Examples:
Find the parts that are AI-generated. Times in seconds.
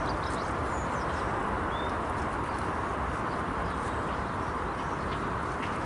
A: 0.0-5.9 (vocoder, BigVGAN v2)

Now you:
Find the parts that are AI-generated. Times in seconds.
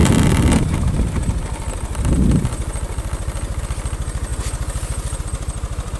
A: none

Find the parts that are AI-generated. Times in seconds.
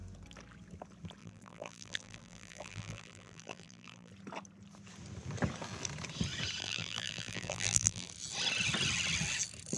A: 1.2-4.1 (vocoder, BigVGAN v2); 6.6-8.1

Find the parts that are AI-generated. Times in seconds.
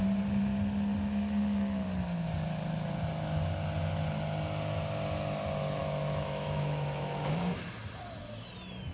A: 5.8-7.2 (autoencoder, DAC-VAE)